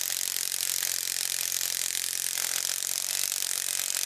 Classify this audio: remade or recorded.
recorded